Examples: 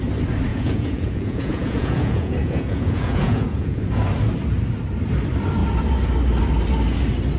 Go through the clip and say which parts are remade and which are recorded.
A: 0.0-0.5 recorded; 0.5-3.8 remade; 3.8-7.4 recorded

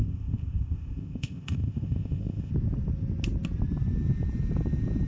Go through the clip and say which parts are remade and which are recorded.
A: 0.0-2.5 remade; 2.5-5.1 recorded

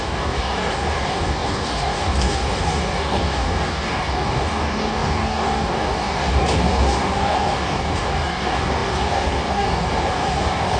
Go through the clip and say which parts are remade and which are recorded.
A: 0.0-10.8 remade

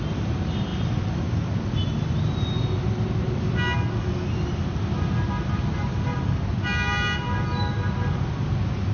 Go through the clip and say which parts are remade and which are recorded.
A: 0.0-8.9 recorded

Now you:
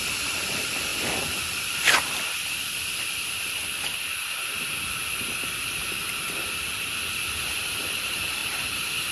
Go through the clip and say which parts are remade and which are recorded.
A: 0.0-9.1 remade

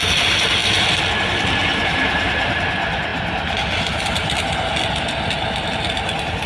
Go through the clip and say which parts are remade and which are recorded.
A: 0.0-1.6 recorded; 1.6-2.6 remade; 2.6-6.5 recorded

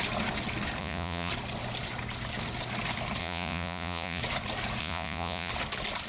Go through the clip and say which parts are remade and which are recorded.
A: 0.0-0.8 recorded; 0.8-1.3 remade; 1.3-3.2 recorded; 3.2-4.2 remade; 4.2-4.8 recorded; 4.8-5.5 remade; 5.5-6.1 recorded